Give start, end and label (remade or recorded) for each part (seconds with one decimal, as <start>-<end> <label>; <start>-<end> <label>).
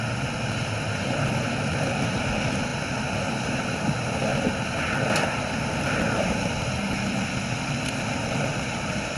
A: 0.0-9.2 recorded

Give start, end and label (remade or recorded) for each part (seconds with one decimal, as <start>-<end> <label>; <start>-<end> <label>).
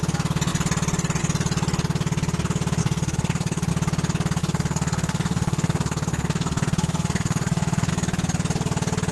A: 0.0-2.8 recorded; 2.8-3.7 remade; 3.7-4.4 recorded; 4.4-7.9 remade; 7.9-9.1 recorded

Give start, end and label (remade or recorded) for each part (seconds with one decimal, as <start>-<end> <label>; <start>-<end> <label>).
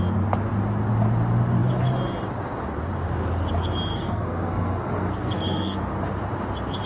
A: 0.0-3.9 recorded; 3.9-5.8 remade; 5.8-6.9 recorded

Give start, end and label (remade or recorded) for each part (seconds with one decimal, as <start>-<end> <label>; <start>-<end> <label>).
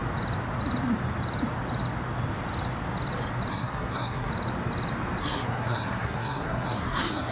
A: 0.0-3.5 recorded; 3.5-4.3 remade; 4.3-5.2 recorded; 5.2-7.3 remade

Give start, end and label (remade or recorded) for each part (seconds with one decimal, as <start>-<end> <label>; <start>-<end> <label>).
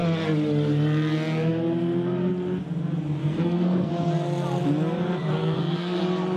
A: 0.0-3.2 recorded; 3.2-3.9 remade; 3.9-5.4 recorded; 5.4-6.0 remade; 6.0-6.4 recorded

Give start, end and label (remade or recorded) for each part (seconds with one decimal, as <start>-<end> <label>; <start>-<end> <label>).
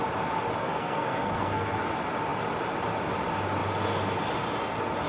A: 0.0-0.6 recorded; 0.6-1.8 remade; 1.8-5.1 recorded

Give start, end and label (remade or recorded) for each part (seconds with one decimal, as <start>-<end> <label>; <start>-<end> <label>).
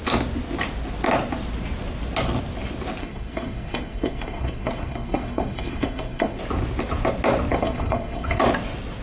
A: 0.0-3.0 recorded; 3.0-6.4 remade; 6.4-7.5 recorded; 7.5-8.4 remade; 8.4-9.0 recorded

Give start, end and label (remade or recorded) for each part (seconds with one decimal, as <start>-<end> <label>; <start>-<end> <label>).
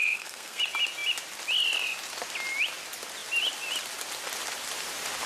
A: 0.0-0.6 remade; 0.6-5.3 recorded